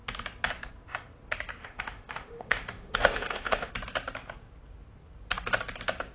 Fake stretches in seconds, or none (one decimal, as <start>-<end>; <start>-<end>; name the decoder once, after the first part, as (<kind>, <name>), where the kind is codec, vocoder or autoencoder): 1.6-3.7 (autoencoder, DAC-VAE)